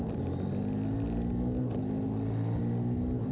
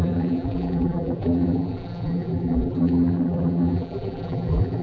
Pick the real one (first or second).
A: first